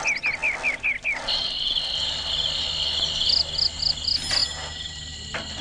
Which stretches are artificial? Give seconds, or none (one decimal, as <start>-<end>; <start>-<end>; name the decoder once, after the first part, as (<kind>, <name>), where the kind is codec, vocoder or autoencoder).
none